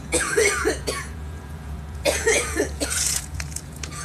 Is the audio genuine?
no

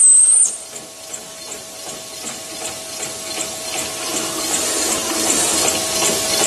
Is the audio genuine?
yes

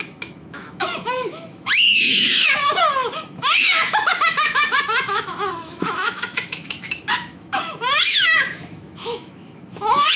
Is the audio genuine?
no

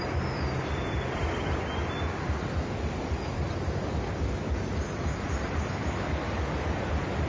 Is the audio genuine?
yes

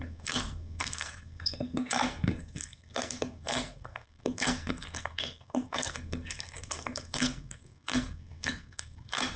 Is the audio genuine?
no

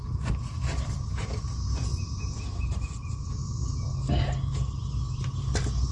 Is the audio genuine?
yes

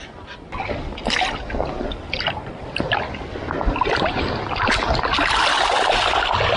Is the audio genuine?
yes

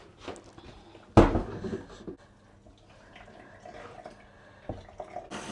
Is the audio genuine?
yes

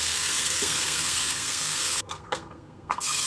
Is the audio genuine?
no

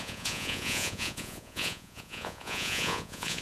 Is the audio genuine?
no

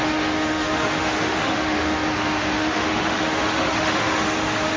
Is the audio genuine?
no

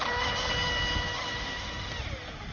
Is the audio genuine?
yes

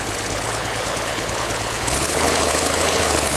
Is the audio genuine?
no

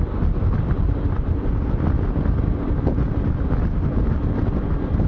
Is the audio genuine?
yes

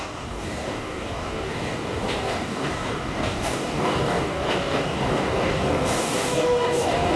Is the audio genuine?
no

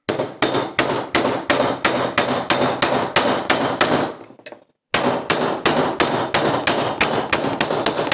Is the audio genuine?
yes